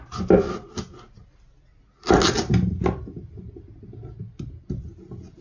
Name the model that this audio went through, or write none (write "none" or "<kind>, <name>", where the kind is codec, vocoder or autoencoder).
none